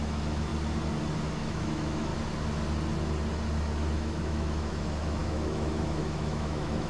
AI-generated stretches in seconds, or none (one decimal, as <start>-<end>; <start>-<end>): 0.0-0.5; 1.3-2.1; 3.9-6.9